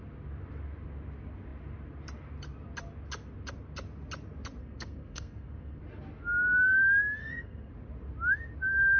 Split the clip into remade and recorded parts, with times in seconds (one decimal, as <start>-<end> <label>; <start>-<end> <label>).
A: 0.0-4.6 recorded; 4.6-5.8 remade; 5.8-7.2 recorded; 7.2-7.7 remade; 7.7-9.0 recorded